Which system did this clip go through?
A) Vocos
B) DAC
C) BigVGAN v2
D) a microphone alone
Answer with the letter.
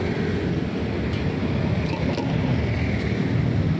D